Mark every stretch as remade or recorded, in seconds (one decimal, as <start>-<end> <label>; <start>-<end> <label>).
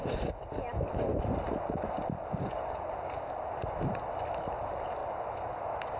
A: 0.0-6.0 recorded